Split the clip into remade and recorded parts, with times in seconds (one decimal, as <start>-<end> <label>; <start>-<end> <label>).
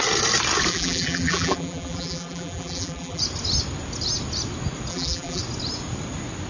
0.0-0.7 recorded; 0.7-3.2 remade; 3.2-4.9 recorded; 4.9-5.4 remade; 5.4-6.5 recorded